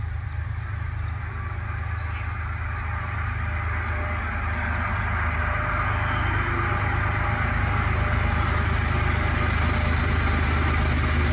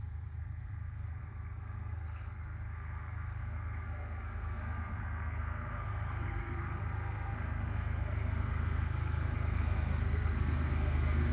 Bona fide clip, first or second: first